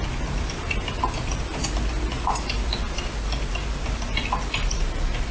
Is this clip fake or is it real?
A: real